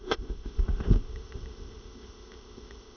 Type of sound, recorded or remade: remade